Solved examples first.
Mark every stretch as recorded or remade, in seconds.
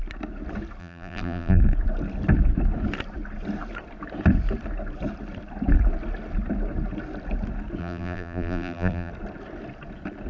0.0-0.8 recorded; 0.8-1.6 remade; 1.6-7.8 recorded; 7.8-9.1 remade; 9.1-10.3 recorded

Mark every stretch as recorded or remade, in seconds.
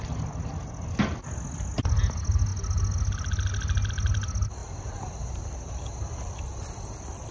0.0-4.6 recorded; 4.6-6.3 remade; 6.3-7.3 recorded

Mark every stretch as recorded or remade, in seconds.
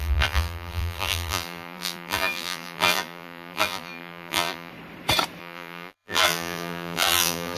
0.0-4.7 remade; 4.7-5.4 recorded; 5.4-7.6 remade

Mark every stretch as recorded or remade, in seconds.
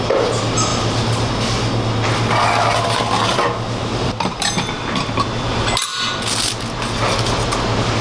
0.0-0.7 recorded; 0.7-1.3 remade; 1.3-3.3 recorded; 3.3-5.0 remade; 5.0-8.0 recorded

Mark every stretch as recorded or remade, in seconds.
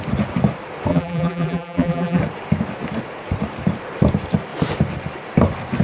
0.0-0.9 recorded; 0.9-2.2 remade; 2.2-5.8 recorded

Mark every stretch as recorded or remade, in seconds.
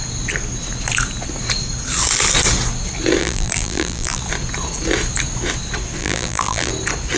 0.0-3.2 recorded; 3.2-4.2 remade; 4.2-6.0 recorded; 6.0-6.7 remade; 6.7-7.2 recorded